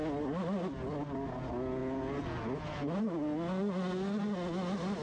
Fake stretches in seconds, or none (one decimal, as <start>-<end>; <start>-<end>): none